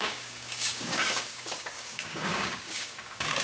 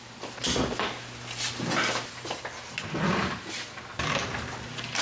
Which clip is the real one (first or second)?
second